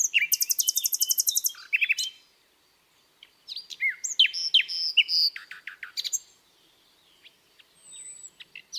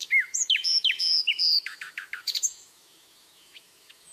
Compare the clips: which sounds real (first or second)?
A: first